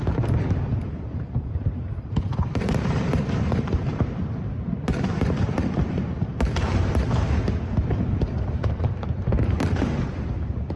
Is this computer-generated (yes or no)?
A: yes